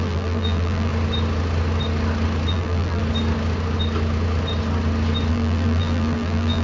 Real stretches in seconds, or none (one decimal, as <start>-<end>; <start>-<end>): 0.9-2.5; 3.0-5.3